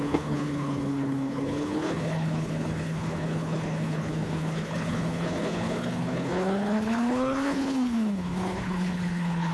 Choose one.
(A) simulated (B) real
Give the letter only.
A